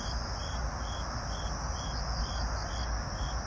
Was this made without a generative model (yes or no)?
yes